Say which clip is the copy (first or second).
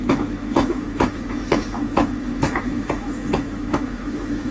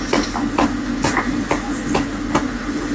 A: first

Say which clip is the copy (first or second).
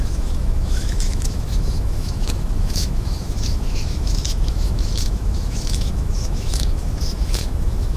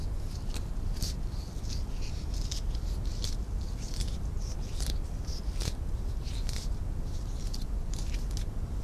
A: first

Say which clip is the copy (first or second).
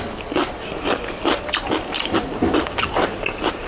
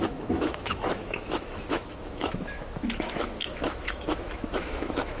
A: second